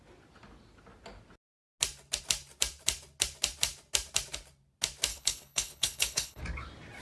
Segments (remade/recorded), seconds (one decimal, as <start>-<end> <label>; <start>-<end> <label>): 0.0-5.1 recorded; 5.1-6.4 remade; 6.4-7.0 recorded